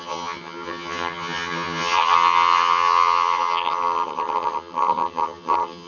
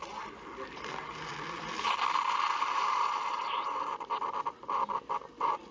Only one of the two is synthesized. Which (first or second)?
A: first